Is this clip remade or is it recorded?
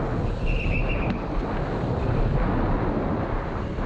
recorded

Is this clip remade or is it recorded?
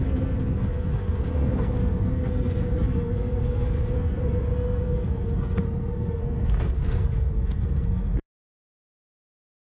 remade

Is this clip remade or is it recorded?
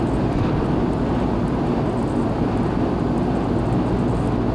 recorded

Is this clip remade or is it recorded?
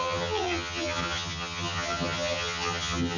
remade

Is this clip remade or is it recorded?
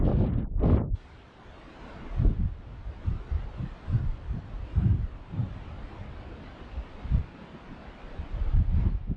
recorded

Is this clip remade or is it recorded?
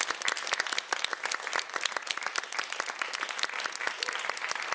recorded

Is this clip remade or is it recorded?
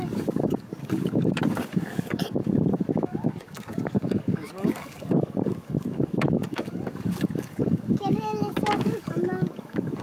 remade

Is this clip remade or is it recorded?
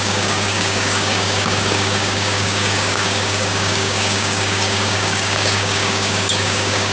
remade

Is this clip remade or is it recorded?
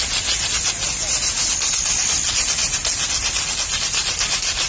recorded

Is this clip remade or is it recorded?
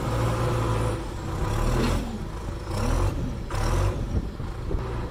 recorded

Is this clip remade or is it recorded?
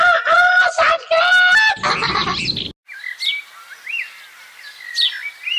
recorded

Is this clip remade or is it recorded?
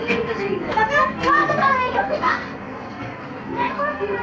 remade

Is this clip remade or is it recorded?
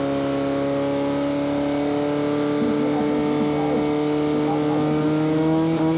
recorded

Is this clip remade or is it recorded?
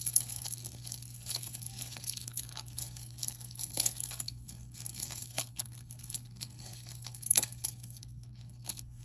remade